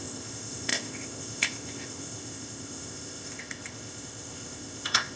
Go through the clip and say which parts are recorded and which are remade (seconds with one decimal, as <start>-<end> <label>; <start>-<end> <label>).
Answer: 0.0-5.2 remade